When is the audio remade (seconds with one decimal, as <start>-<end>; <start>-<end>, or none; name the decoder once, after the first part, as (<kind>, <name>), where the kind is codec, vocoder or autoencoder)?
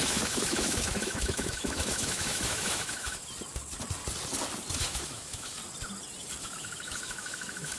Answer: 0.0-3.2 (autoencoder, DAC-VAE); 4.8-5.6; 6.4-7.8